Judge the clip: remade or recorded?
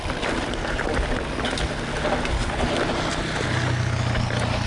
recorded